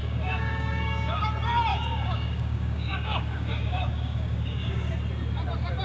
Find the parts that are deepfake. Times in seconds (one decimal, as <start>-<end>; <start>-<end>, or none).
0.0-1.2; 1.7-4.9